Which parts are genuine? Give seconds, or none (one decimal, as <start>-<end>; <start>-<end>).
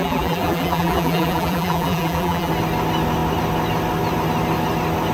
2.5-5.1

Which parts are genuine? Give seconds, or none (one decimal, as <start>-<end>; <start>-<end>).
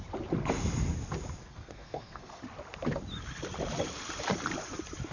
0.0-1.4; 2.4-5.1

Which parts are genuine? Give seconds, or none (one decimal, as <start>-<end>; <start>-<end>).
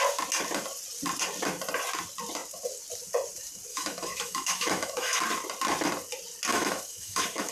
0.0-3.7; 5.2-6.5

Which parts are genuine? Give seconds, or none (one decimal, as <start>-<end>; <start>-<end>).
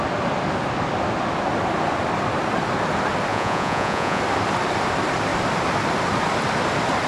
0.0-3.3; 4.2-7.1